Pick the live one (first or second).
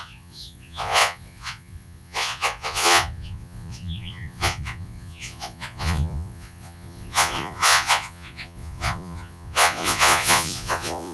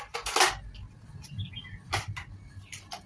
second